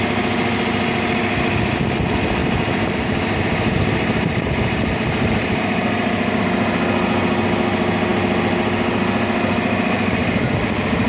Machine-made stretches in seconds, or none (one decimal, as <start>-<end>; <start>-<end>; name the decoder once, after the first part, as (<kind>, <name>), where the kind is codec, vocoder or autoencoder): 2.4-6.4 (vocoder, BigVGAN v2)